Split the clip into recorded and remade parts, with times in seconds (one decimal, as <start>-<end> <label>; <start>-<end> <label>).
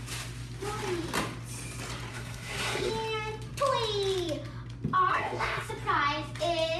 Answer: 0.0-2.1 recorded; 2.1-2.9 remade; 2.9-5.1 recorded; 5.1-5.7 remade; 5.7-6.8 recorded